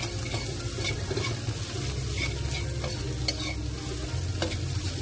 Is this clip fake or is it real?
real